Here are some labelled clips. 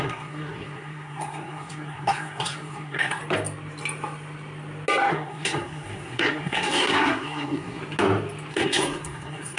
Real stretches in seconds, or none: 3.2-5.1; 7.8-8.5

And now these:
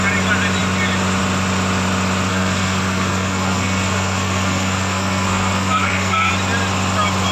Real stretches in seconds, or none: 0.0-2.3; 6.3-7.3

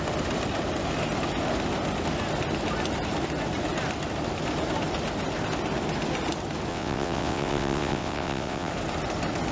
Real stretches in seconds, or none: 0.0-6.7; 8.7-9.5

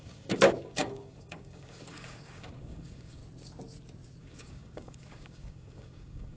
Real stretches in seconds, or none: 3.2-4.2